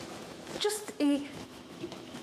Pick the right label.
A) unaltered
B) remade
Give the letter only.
B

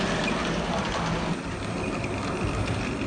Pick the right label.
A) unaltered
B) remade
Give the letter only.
A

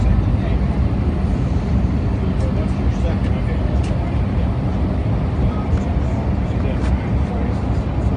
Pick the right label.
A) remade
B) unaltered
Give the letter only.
B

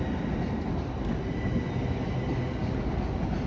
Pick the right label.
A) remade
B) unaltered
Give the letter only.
B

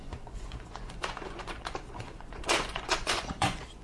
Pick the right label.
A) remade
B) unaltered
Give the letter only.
A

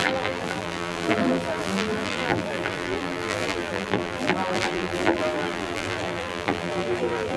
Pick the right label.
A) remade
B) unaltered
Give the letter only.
A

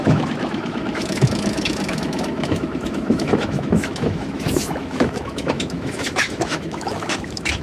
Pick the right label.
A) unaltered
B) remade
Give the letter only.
B